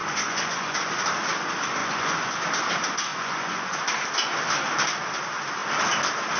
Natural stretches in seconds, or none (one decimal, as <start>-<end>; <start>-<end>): 0.9-1.8; 2.4-3.1; 3.8-6.4